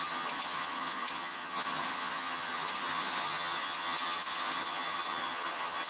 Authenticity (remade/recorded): remade